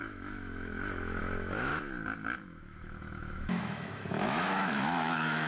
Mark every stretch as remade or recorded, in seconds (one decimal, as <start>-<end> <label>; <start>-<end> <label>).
0.0-1.7 remade; 1.7-2.4 recorded; 2.4-5.5 remade